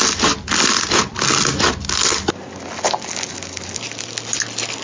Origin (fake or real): real